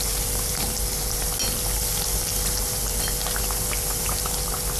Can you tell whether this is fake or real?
real